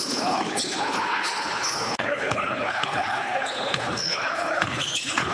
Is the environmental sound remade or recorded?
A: remade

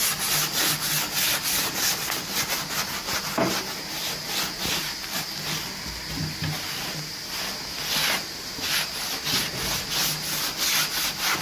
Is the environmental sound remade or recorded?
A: recorded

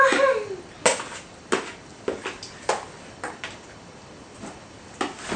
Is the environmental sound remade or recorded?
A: recorded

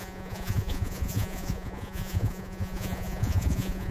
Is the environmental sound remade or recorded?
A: remade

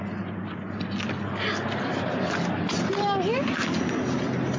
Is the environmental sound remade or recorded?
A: recorded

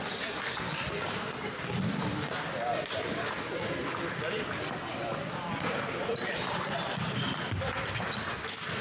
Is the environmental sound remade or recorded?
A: recorded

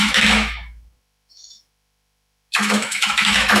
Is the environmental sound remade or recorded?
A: remade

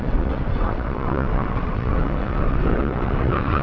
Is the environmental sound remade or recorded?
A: remade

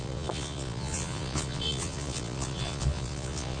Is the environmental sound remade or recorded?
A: remade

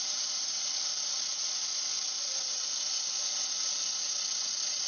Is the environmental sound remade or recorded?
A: recorded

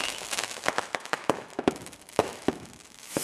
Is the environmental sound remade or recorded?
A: remade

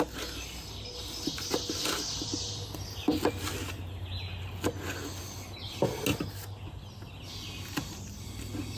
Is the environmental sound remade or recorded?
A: recorded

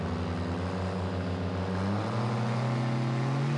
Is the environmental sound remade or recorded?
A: recorded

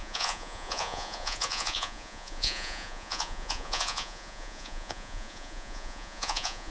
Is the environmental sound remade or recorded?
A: remade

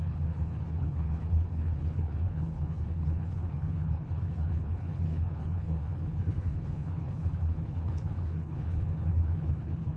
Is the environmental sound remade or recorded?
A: remade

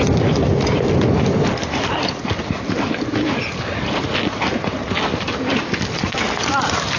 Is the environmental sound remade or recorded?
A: recorded